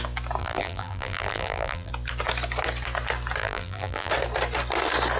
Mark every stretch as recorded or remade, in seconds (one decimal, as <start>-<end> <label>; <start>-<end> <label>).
0.0-0.4 recorded; 0.4-1.9 remade; 1.9-3.4 recorded; 3.4-4.1 remade; 4.1-5.2 recorded